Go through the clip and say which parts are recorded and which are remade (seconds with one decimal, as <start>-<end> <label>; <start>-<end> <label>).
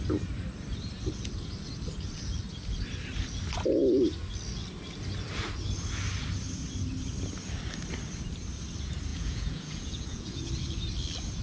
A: 0.0-9.1 recorded; 9.1-10.5 remade; 10.5-11.4 recorded